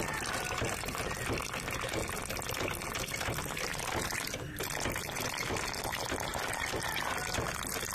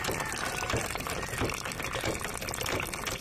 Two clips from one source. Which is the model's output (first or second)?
second